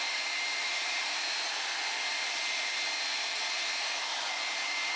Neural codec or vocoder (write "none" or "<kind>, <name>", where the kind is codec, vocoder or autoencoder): vocoder, BigVGAN v2